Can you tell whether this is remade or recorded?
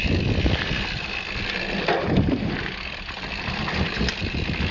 recorded